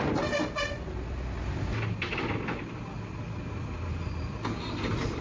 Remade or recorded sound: recorded